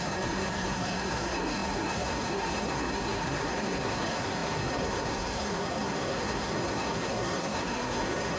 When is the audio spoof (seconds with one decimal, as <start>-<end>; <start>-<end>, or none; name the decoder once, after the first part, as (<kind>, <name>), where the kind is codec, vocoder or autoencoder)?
0.0-8.4 (codec, SNAC)